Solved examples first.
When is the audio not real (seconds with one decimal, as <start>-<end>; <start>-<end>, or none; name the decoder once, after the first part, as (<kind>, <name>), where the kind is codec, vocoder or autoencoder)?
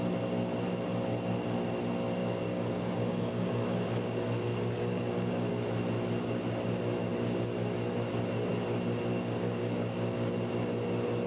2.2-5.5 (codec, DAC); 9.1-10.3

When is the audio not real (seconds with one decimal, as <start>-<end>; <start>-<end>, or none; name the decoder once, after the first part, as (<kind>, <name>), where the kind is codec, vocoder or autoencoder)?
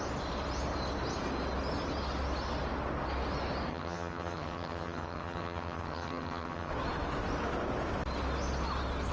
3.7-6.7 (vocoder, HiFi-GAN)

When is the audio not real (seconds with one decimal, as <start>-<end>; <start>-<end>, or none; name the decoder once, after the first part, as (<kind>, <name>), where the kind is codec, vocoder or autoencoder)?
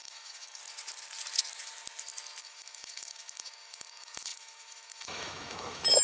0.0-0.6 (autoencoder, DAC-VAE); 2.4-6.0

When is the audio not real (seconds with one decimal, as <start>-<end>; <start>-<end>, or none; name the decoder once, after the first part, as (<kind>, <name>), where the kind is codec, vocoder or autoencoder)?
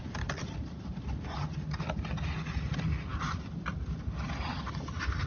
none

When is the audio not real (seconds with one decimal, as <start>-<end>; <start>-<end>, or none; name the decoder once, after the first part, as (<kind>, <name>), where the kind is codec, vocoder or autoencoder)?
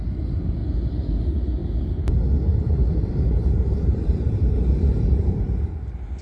2.5-5.7 (vocoder, BigVGAN v2)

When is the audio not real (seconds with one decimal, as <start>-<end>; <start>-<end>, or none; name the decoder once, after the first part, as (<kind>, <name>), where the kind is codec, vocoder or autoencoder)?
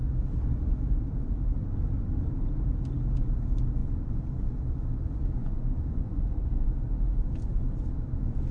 5.4-6.6 (vocoder, Vocos)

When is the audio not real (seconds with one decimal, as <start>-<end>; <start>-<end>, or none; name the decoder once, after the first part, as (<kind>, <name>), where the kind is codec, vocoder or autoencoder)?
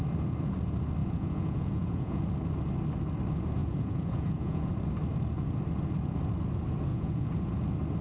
1.0-2.2 (vocoder, Vocos); 3.6-4.7; 6.9-7.5